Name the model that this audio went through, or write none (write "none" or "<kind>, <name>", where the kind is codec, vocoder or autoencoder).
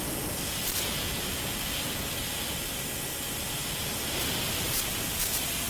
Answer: none